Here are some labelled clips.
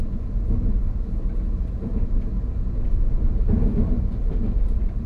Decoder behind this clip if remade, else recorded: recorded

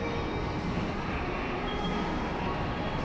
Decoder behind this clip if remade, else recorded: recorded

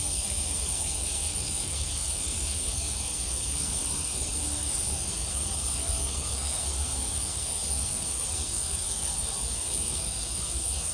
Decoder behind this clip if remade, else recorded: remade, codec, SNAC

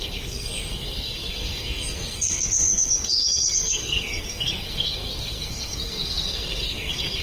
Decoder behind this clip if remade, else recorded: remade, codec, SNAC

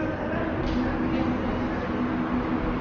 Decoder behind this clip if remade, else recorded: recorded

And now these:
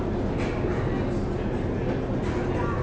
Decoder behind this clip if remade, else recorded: recorded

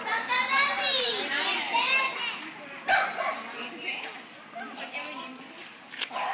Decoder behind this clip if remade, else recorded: recorded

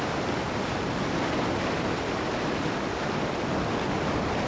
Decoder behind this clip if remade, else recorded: recorded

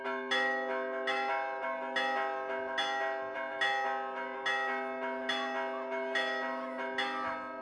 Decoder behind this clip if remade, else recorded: recorded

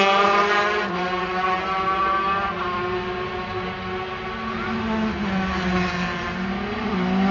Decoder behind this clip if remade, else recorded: recorded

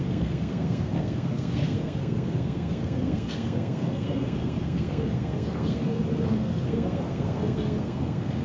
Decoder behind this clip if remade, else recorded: remade, codec, SNAC